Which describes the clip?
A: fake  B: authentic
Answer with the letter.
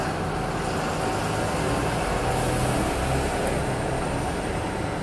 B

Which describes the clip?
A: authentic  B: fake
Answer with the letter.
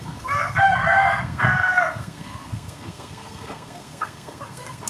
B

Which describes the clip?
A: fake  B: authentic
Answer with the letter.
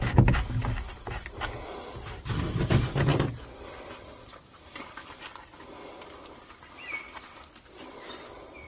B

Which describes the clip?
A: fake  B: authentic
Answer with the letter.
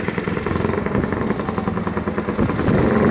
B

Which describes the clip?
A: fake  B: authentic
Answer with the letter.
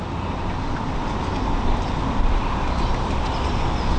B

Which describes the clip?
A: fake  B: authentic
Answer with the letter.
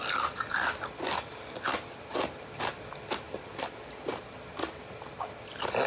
B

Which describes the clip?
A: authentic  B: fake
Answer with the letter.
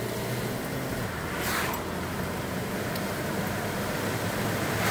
A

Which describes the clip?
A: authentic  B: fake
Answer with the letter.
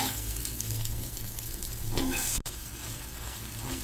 B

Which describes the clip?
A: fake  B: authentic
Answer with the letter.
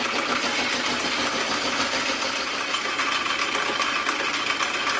B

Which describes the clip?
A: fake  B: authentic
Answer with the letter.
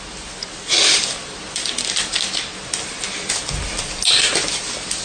B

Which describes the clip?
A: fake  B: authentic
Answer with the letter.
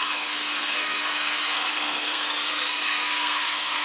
A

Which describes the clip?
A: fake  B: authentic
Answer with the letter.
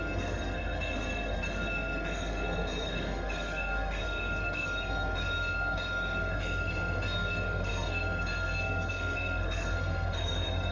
A